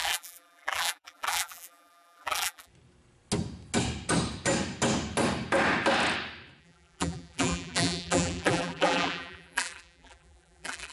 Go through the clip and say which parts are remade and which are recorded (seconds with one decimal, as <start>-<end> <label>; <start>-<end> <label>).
0.0-2.7 remade; 2.7-6.6 recorded; 6.6-10.9 remade

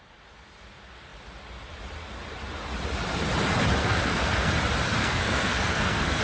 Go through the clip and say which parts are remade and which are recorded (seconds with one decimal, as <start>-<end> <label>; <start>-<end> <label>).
0.0-3.8 recorded; 3.8-4.5 remade; 4.5-5.0 recorded; 5.0-6.2 remade

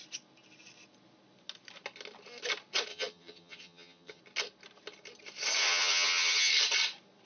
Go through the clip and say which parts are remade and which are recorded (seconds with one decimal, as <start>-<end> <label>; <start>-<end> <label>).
0.0-2.9 recorded; 2.9-4.2 remade; 4.2-5.6 recorded; 5.6-6.5 remade; 6.5-7.3 recorded

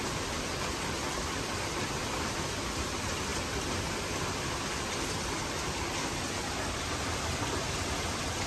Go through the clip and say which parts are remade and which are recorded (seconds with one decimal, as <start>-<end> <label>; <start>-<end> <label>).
0.0-8.5 recorded

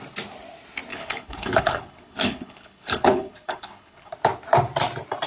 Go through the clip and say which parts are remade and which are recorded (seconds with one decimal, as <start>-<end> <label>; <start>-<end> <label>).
0.0-0.9 recorded; 0.9-4.1 remade; 4.1-5.3 recorded

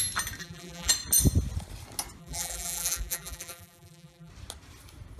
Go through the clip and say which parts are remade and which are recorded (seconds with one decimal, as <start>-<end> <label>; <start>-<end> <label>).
0.0-0.4 recorded; 0.4-0.9 remade; 0.9-2.2 recorded; 2.2-4.3 remade; 4.3-5.2 recorded

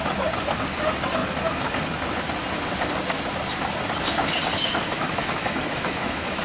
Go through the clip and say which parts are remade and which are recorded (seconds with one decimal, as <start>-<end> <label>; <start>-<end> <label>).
0.0-4.5 recorded; 4.5-6.4 remade

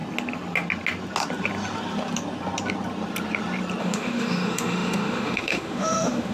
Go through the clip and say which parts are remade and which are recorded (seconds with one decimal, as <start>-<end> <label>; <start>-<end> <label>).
0.0-3.8 recorded; 3.8-6.3 remade